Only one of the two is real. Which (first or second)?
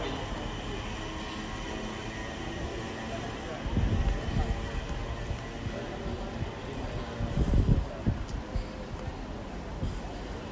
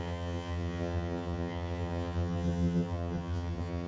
first